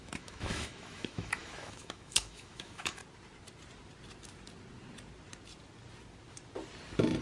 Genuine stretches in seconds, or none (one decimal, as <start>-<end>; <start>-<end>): 3.0-7.2